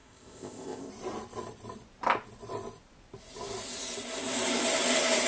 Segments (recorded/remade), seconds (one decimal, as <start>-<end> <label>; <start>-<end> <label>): 0.0-0.9 remade; 0.9-5.3 recorded